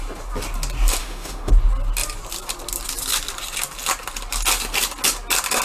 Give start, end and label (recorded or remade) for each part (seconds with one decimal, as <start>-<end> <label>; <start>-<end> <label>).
0.0-1.0 recorded; 1.0-1.5 remade; 1.5-5.6 recorded